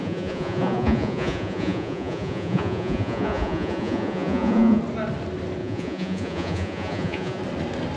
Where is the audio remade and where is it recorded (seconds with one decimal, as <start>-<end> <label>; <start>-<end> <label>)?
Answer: 0.0-4.8 remade; 4.8-5.6 recorded; 5.6-7.4 remade; 7.4-8.0 recorded